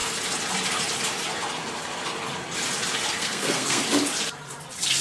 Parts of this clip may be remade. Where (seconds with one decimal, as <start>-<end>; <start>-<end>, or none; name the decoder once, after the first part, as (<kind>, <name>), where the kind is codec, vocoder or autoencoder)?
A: 3.2-3.8 (codec, SNAC)